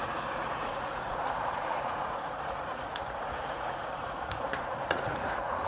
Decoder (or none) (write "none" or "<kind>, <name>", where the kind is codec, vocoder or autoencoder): vocoder, Vocos